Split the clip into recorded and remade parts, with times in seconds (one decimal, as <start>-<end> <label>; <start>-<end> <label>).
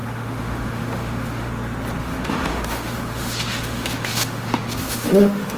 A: 0.0-1.5 remade; 1.5-2.0 recorded; 2.0-5.6 remade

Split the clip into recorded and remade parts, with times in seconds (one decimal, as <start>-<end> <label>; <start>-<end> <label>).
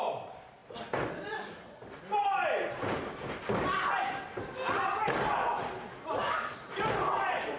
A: 0.0-0.6 remade; 0.6-3.9 recorded; 3.9-5.0 remade; 5.0-6.2 recorded; 6.2-7.6 remade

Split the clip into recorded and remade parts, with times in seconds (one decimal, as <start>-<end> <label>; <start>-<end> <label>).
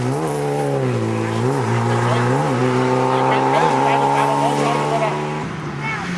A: 0.0-6.2 recorded